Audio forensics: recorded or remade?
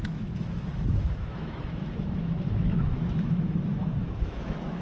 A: remade